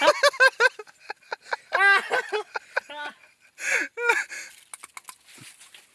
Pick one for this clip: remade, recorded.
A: recorded